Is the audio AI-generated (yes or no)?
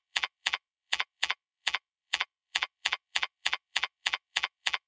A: yes